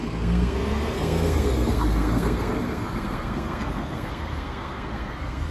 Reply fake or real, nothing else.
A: fake